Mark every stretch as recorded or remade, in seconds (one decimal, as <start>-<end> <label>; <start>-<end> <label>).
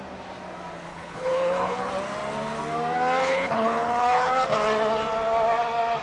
0.0-0.9 recorded; 0.9-1.9 remade; 1.9-3.2 recorded; 3.2-4.3 remade; 4.3-6.0 recorded